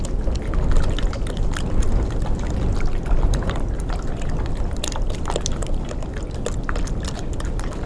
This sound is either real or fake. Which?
real